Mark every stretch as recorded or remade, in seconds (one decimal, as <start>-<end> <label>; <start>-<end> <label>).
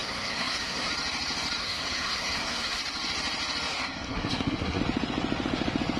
0.0-0.9 remade; 0.9-1.6 recorded; 1.6-2.8 remade; 2.8-3.7 recorded; 3.7-4.8 remade; 4.8-6.0 recorded